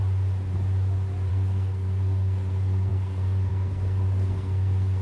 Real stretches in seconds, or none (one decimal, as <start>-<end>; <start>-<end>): 0.0-1.3

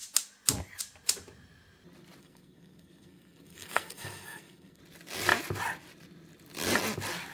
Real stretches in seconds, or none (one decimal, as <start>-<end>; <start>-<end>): 0.0-2.2; 4.8-7.3

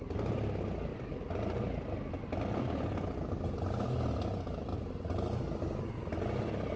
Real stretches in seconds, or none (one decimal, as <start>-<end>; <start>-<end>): 0.0-6.8

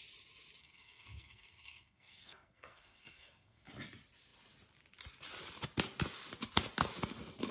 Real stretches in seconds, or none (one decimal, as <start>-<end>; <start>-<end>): 0.0-0.6; 3.7-7.5

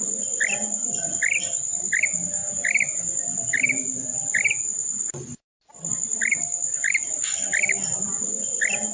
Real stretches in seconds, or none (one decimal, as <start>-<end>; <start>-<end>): 0.0-8.9

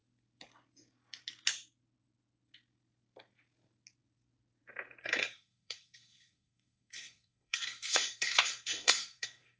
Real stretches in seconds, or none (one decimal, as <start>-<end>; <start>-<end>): 0.0-5.0

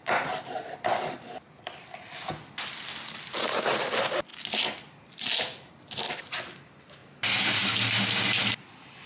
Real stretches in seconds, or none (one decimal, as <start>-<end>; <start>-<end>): 1.6-7.0; 7.6-9.1